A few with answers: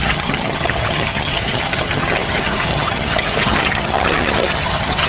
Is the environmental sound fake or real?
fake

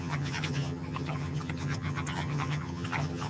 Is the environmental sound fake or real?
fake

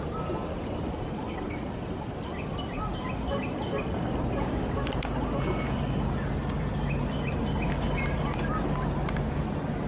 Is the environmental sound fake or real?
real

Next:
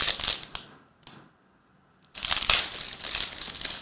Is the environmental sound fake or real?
real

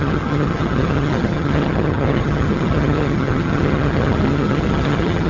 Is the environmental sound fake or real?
fake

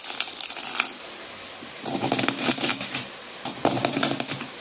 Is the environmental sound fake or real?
real